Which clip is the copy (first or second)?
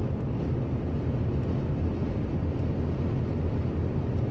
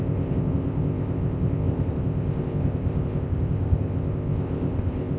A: second